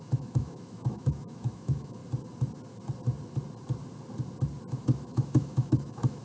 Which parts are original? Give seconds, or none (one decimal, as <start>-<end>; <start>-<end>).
2.0-4.7